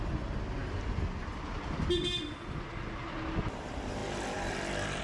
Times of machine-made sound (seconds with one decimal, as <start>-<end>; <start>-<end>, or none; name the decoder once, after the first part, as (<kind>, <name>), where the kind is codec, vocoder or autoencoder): none